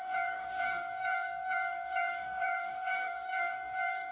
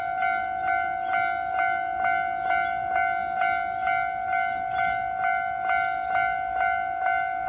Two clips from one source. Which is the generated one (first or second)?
first